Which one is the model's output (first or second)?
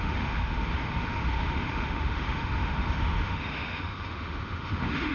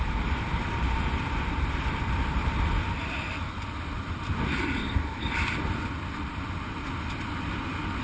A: first